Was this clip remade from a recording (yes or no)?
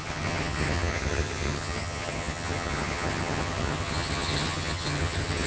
yes